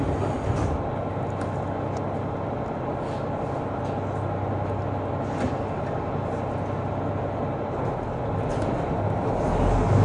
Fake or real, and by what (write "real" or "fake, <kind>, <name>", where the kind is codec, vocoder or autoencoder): real